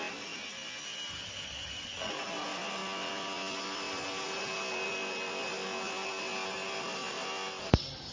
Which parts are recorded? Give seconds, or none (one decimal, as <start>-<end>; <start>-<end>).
0.0-1.1; 2.1-8.1